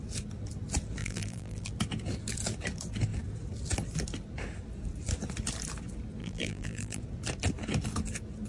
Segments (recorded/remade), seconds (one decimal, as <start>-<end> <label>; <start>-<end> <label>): 0.0-1.0 recorded; 1.0-1.7 remade; 1.7-6.2 recorded; 6.2-7.0 remade; 7.0-8.5 recorded